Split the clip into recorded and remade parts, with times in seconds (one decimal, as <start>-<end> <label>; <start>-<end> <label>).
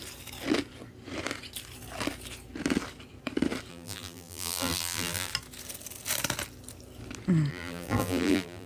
0.0-3.7 recorded; 3.7-5.3 remade; 5.3-7.5 recorded; 7.5-8.7 remade